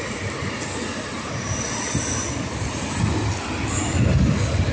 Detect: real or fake real